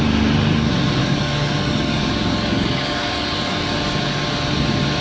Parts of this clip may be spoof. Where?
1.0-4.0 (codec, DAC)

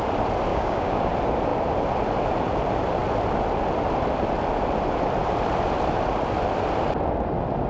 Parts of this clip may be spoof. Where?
0.5-1.1 (codec, DAC)